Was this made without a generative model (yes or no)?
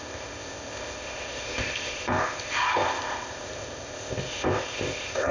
no